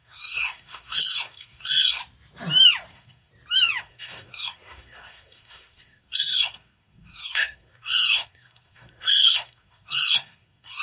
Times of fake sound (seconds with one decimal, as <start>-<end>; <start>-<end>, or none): 0.0-2.0; 2.9-3.3; 3.8-10.8